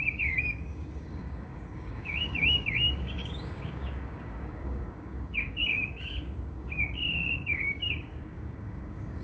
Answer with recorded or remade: remade